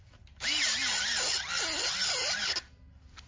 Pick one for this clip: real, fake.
real